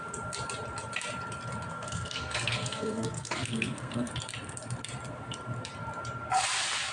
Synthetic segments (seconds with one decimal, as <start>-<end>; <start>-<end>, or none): 1.7-4.1

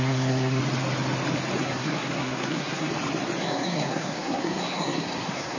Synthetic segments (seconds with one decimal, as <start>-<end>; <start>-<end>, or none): 0.0-0.6; 1.6-2.9; 3.4-5.6

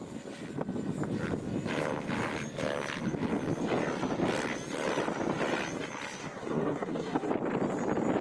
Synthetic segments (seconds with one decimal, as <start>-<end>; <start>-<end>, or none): 6.2-7.3

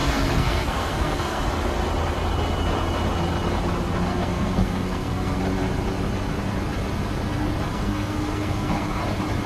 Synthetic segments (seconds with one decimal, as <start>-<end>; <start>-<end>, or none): 0.0-1.4; 4.1-5.4; 7.7-9.0

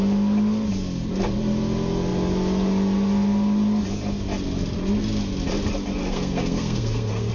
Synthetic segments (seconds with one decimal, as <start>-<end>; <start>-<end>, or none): 6.0-7.3

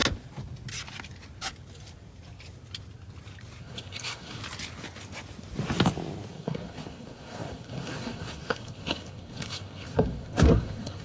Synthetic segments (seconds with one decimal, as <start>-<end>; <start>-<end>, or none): 3.6-4.4; 6.3-11.0

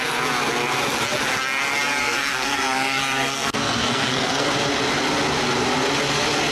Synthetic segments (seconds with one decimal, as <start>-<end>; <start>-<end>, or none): 2.0-4.5

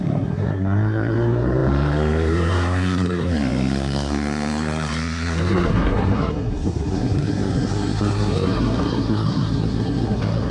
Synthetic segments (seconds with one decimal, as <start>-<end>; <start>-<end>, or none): 0.0-10.5